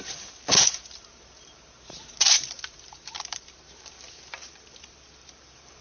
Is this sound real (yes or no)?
no